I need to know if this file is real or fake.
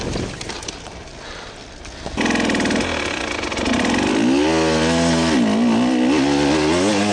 real